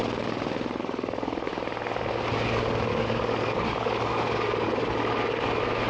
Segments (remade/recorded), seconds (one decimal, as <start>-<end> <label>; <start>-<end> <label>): 0.0-0.8 recorded; 0.8-1.5 remade; 1.5-2.9 recorded; 2.9-4.9 remade; 4.9-5.9 recorded